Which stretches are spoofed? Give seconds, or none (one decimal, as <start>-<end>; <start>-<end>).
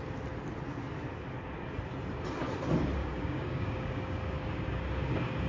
3.0-5.5